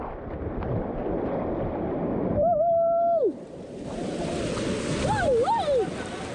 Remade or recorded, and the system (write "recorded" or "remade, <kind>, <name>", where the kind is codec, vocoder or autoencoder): recorded